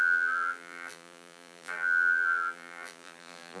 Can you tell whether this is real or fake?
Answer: fake